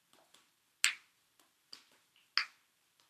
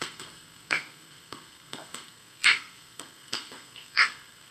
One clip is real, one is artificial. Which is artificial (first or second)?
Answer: second